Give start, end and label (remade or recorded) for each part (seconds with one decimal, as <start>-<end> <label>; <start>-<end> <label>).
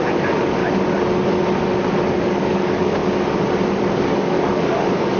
0.0-0.6 remade; 0.6-2.2 recorded; 2.2-3.0 remade; 3.0-3.8 recorded; 3.8-5.2 remade